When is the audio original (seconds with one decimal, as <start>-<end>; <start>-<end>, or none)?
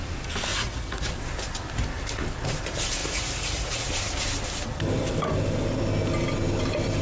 0.0-0.5; 1.1-3.0; 3.9-7.0